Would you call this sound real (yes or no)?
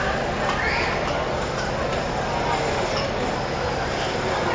yes